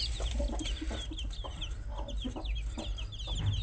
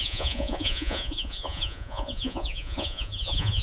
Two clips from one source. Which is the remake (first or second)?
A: second